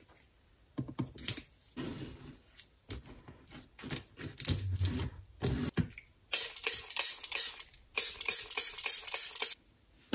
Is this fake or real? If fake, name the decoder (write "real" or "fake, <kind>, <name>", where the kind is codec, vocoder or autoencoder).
real